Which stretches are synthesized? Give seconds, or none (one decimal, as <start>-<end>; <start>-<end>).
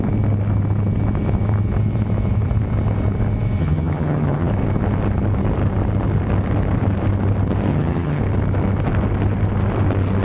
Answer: 3.6-4.5; 7.7-8.2